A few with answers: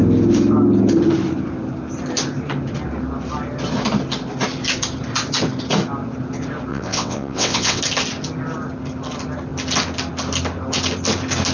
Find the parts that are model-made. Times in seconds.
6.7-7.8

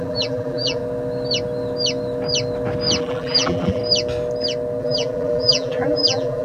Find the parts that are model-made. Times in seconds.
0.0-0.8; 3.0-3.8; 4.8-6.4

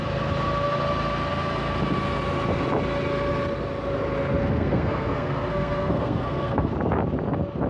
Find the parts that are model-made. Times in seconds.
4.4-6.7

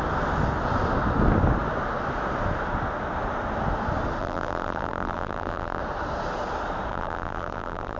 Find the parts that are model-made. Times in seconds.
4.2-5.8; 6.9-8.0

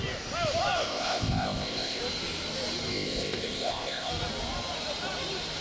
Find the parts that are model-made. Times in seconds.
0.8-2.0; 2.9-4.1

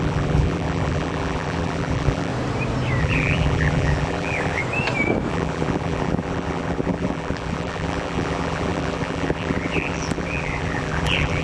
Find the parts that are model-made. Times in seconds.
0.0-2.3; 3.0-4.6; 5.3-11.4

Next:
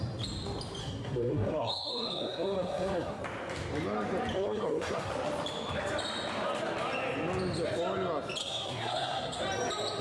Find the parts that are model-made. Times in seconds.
0.8-3.2; 4.3-5.1; 8.4-9.4

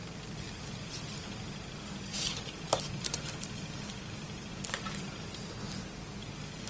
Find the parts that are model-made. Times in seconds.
0.0-0.9; 2.1-4.5